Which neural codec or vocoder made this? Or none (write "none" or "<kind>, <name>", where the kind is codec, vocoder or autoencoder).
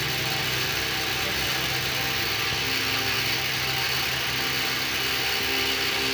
none